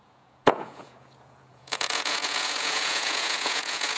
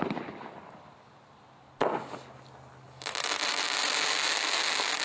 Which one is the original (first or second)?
second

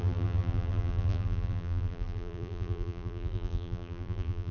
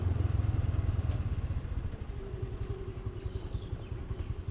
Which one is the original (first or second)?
second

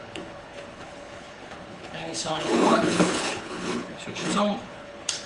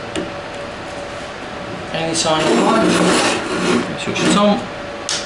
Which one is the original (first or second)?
second